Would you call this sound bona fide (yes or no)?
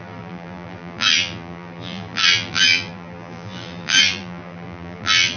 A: no